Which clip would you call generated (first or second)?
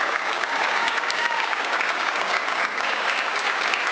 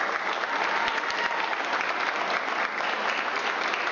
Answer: first